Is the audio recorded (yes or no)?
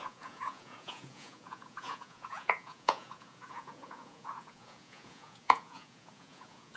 no